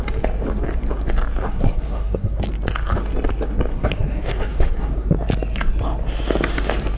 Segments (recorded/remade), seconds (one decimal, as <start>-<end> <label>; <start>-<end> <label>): 0.0-1.5 recorded; 1.5-2.4 remade; 2.4-3.7 recorded; 3.7-5.1 remade; 5.1-7.0 recorded